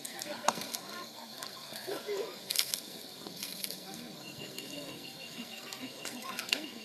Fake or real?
fake